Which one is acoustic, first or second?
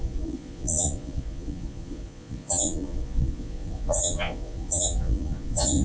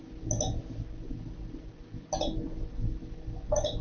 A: second